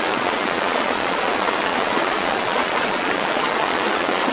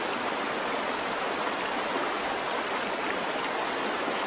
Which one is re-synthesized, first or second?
first